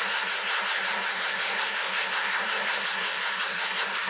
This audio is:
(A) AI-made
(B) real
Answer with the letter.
A